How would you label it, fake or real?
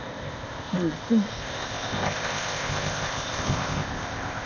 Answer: fake